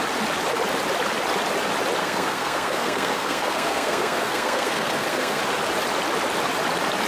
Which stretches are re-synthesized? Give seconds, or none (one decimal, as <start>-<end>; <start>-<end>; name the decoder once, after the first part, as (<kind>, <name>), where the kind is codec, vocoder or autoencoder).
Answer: 2.0-5.4 (codec, SNAC)